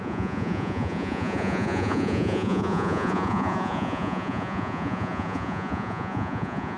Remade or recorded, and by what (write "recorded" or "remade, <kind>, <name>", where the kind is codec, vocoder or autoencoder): remade, vocoder, Vocos